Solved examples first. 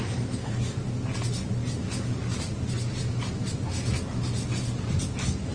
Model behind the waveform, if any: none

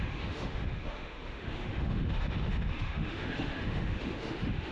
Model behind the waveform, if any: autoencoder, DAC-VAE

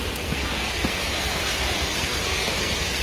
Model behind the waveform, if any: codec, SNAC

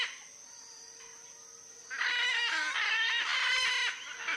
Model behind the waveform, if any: none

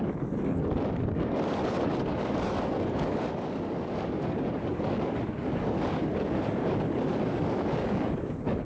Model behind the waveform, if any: codec, DAC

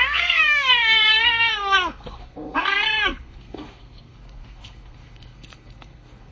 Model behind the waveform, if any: codec, SNAC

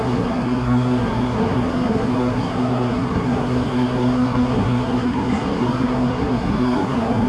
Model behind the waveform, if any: codec, SNAC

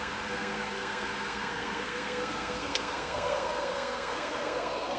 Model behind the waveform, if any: codec, SNAC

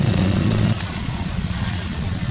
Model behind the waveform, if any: vocoder, Vocos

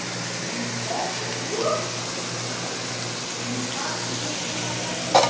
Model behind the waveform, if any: none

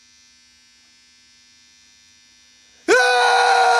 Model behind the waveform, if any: none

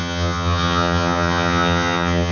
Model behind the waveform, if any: vocoder, HiFi-GAN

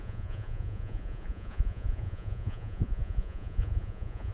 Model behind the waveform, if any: vocoder, Vocos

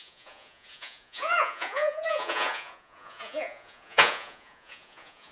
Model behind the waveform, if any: vocoder, Vocos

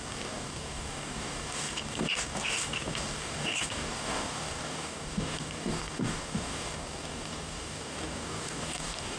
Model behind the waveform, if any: codec, DAC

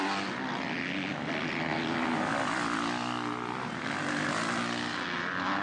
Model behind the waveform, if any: none